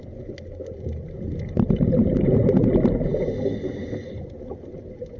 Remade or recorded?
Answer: recorded